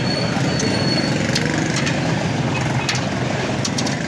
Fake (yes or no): no